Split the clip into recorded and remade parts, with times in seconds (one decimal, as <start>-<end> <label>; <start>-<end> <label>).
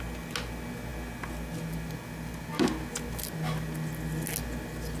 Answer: 0.0-5.0 recorded